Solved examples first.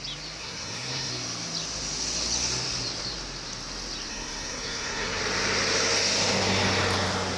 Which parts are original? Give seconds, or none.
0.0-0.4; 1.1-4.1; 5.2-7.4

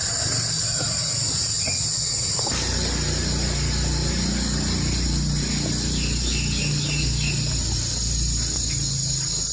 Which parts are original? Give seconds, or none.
0.0-9.5

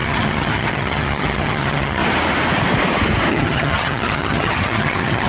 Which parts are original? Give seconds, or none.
2.0-3.3

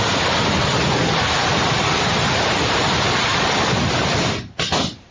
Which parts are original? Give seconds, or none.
0.0-0.7; 3.8-5.1

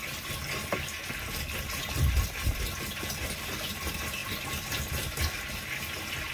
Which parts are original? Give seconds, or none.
0.0-6.3

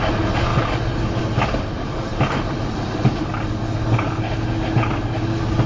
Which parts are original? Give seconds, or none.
0.0-5.7